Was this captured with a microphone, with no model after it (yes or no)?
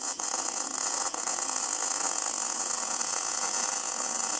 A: no